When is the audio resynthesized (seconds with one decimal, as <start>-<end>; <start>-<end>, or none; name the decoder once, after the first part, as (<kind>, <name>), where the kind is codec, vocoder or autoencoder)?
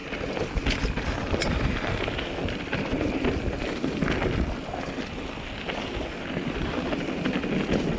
none